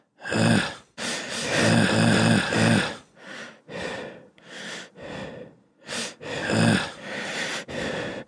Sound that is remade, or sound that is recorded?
recorded